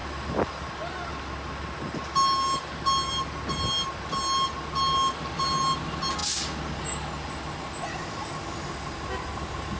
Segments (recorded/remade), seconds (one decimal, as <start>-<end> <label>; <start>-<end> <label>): 0.0-9.8 recorded